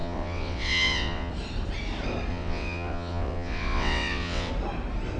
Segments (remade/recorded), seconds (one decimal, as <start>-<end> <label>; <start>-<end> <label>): 0.0-1.3 remade; 1.3-2.3 recorded; 2.3-4.5 remade; 4.5-5.2 recorded